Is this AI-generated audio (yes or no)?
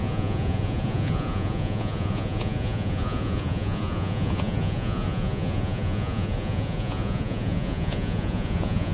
yes